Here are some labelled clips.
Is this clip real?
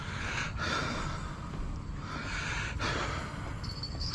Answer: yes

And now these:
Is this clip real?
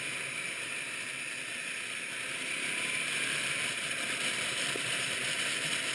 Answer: no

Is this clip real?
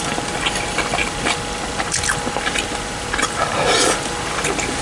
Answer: yes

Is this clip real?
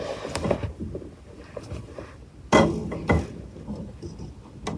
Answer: yes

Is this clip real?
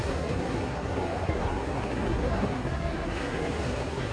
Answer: no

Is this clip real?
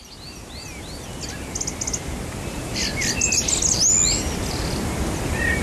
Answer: yes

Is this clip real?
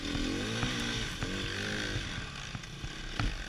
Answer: yes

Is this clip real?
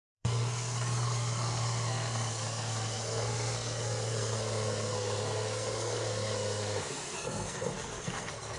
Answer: no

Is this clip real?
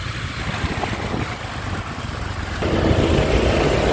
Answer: yes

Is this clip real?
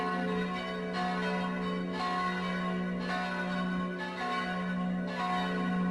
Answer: yes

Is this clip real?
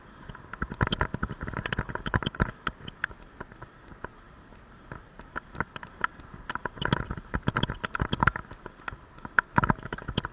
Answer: yes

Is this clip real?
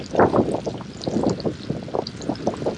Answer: yes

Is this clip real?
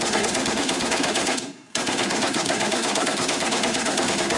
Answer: no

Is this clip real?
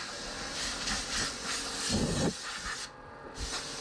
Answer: yes